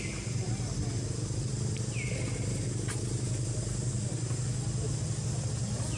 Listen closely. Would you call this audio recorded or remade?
remade